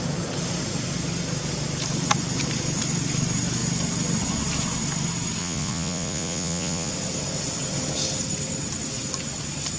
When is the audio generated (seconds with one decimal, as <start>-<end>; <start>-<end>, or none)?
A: 5.4-6.9